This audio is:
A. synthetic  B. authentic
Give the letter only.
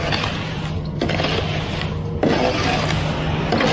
B